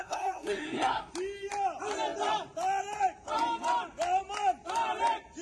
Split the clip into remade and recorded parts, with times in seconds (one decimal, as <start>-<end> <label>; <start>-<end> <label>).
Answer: 0.0-1.1 remade; 1.1-5.4 recorded